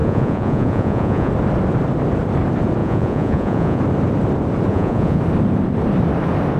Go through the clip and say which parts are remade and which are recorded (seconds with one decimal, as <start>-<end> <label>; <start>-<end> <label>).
0.0-1.3 remade; 1.3-2.8 recorded; 2.8-3.8 remade; 3.8-4.7 recorded; 4.7-5.2 remade; 5.2-6.6 recorded